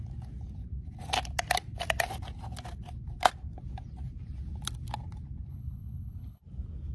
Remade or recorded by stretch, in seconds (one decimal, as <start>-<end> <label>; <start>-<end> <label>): 0.0-5.5 recorded; 5.5-6.4 remade; 6.4-6.9 recorded